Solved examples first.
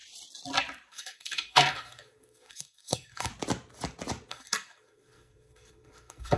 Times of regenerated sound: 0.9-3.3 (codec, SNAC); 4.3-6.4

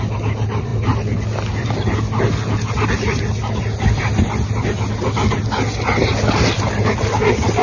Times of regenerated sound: none

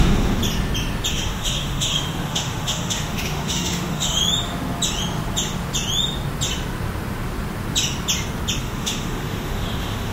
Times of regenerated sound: 0.0-0.4 (autoencoder, DAC-VAE); 1.1-4.2; 8.6-10.1